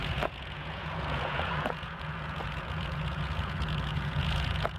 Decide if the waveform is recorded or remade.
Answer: remade